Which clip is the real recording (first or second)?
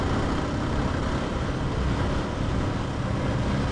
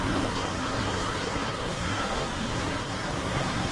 first